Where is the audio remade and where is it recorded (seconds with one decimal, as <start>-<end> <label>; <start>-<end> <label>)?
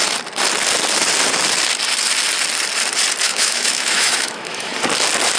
0.0-3.2 recorded; 3.2-4.7 remade; 4.7-5.4 recorded